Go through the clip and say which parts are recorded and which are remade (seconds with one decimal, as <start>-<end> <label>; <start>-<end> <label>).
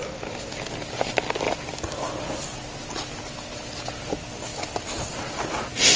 0.0-6.0 recorded